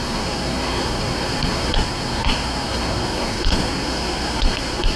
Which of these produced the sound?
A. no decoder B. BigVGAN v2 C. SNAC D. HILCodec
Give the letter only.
C